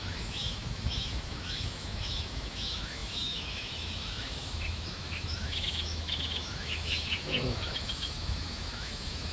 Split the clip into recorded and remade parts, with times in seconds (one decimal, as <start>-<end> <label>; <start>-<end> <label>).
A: 0.0-9.3 remade